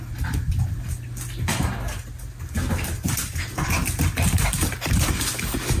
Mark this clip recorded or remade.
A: recorded